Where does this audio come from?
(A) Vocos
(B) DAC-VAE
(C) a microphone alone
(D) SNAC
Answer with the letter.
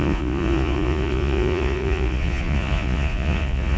A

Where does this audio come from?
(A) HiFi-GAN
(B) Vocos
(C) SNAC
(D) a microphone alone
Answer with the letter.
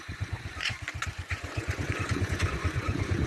B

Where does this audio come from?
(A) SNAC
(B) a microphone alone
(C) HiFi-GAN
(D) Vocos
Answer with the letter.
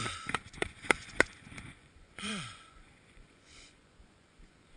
D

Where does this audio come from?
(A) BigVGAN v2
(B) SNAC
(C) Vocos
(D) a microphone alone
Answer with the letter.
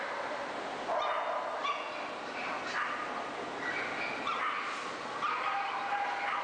D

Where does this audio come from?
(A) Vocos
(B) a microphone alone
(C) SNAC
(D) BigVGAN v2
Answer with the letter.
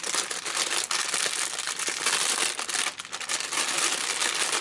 B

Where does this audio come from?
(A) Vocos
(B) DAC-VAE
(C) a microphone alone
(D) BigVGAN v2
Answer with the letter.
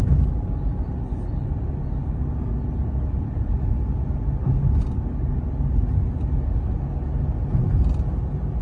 C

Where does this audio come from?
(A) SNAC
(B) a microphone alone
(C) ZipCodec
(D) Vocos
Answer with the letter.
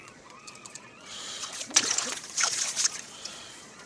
D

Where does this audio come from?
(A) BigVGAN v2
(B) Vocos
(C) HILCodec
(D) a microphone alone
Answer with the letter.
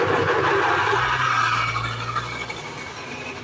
D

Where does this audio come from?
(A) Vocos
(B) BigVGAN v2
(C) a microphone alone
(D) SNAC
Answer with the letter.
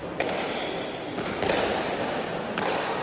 C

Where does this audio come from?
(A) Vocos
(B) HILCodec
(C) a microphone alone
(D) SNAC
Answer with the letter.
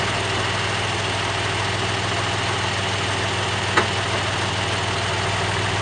C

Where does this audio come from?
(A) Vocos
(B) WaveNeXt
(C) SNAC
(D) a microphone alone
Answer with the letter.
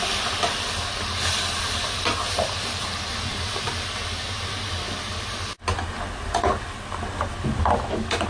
D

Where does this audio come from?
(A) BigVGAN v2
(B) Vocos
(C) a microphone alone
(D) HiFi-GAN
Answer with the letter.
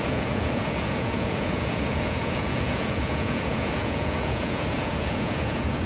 B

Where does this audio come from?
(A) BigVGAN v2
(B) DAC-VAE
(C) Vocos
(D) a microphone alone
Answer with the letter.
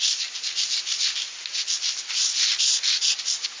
D